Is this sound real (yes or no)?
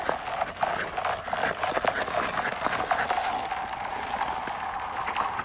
yes